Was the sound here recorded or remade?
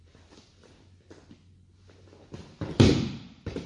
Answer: recorded